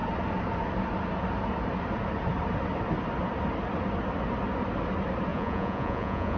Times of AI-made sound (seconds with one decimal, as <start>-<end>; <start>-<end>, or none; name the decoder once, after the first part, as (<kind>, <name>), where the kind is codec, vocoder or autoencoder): 5.3-6.4 (vocoder, Vocos)